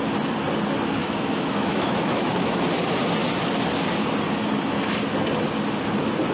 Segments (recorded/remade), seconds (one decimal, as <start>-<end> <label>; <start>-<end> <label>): 0.0-1.0 recorded; 1.0-2.6 remade; 2.6-6.3 recorded